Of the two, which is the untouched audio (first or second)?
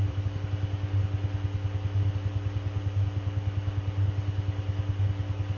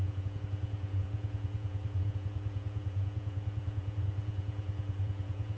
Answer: first